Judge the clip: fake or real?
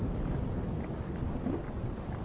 real